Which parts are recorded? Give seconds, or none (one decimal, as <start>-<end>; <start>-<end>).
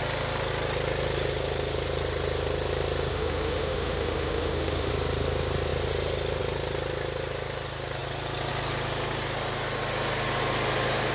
0.0-3.1; 4.9-11.1